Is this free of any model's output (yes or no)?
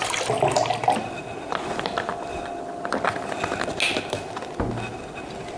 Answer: yes